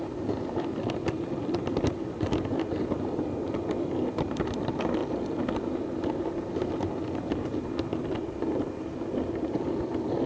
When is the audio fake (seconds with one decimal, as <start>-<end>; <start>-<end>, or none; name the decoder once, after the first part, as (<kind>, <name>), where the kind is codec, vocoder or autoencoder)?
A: none